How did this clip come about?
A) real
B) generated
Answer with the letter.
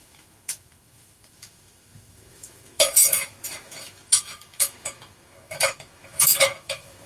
B